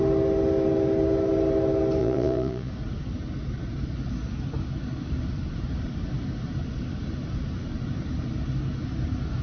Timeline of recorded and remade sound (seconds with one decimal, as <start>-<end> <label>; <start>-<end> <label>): 0.0-2.0 recorded; 2.0-2.7 remade; 2.7-9.4 recorded